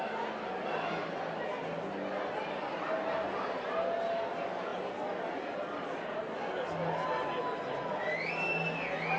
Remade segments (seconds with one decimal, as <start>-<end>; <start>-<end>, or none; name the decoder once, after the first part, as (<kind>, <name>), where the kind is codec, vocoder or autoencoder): none

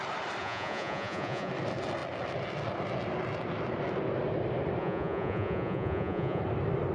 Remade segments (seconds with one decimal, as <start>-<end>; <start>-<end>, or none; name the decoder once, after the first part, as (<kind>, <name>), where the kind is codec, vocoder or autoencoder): 0.4-1.5 (vocoder, Vocos); 4.8-6.4

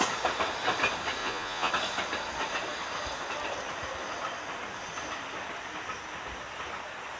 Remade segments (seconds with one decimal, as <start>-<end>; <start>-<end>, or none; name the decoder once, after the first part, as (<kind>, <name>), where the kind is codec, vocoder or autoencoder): 1.2-1.7 (vocoder, Vocos)

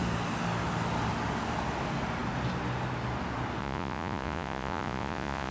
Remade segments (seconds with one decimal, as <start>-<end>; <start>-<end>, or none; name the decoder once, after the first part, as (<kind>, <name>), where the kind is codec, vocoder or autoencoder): 3.6-5.5 (vocoder, Vocos)